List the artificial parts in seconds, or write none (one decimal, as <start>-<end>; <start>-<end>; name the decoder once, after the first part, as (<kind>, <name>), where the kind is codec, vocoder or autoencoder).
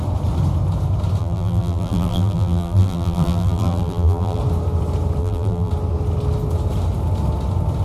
1.2-4.4 (vocoder, BigVGAN v2); 5.2-5.7